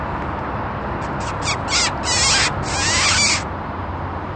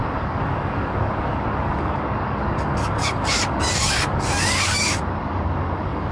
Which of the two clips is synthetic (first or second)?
second